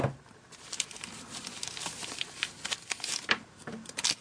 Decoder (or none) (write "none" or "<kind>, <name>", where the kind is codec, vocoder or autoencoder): none